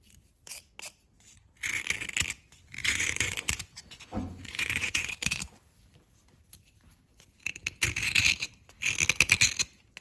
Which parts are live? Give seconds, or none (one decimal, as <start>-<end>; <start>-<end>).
0.0-2.8; 5.4-10.0